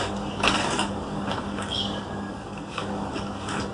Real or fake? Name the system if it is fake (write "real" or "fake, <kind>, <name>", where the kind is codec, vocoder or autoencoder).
fake, codec, DAC